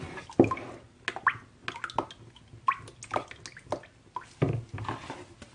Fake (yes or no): no